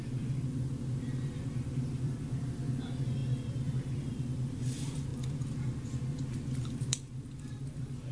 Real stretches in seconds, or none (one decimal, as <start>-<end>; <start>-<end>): 5.1-6.7